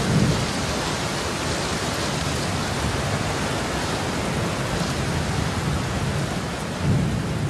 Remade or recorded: recorded